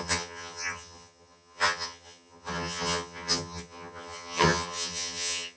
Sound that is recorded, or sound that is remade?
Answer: remade